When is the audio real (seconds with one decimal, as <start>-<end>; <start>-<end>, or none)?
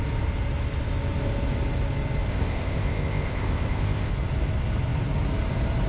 0.0-2.3; 4.1-5.9